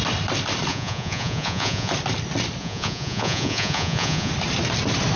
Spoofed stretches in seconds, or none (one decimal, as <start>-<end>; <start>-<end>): 0.7-1.9; 2.6-4.3